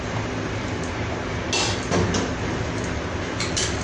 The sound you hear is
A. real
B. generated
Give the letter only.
A